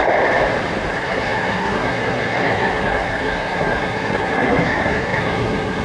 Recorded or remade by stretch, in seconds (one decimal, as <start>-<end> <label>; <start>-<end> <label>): 0.0-0.9 recorded; 0.9-5.8 remade